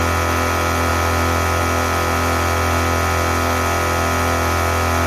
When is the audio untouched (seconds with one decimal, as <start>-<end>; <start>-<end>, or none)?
0.0-5.1